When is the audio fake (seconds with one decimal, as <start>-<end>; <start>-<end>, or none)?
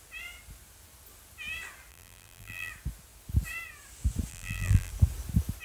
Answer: 1.9-2.7; 4.3-4.9